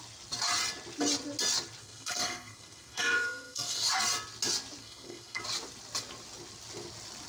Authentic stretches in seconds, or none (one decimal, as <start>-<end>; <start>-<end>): 0.0-1.8; 3.9-4.8; 5.4-7.3